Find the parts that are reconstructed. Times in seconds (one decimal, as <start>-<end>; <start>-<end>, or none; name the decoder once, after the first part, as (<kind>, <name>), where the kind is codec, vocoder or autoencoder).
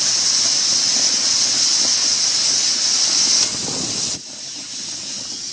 none